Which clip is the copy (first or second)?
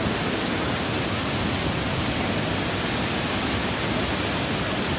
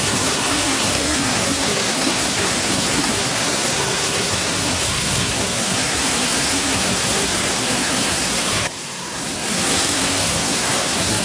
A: second